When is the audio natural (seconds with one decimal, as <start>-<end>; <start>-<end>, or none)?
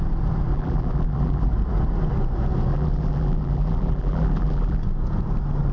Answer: 0.0-0.5; 1.5-2.7; 4.8-5.7